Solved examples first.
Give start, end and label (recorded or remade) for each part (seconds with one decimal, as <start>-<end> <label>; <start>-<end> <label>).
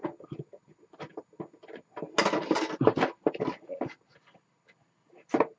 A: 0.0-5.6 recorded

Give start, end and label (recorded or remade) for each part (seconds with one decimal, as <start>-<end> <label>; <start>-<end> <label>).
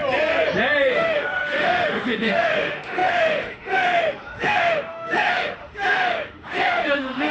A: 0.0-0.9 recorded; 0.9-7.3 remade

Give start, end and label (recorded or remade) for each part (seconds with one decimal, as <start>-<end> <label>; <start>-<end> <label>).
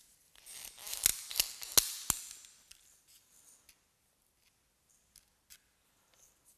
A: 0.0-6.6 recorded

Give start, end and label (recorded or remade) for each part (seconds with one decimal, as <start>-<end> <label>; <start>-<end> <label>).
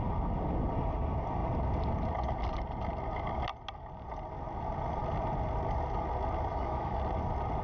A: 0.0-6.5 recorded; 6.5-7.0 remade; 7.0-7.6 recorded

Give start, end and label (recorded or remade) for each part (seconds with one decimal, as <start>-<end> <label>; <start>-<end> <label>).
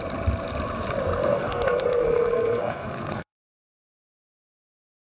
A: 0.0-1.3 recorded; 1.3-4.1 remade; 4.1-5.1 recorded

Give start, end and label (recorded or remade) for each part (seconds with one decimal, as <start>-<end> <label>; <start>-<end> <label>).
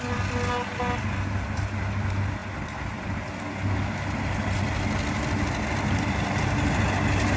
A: 0.0-7.4 recorded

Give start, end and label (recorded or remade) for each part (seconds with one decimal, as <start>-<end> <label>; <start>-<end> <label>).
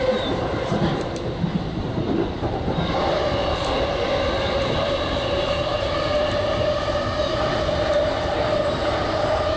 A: 0.0-3.4 remade; 3.4-4.7 recorded; 4.7-9.6 remade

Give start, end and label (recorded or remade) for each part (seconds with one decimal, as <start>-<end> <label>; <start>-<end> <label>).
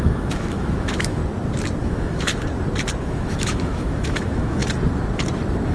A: 0.0-1.2 remade; 1.2-1.8 recorded; 1.8-2.3 remade; 2.3-3.0 recorded; 3.0-4.6 remade; 4.6-5.7 recorded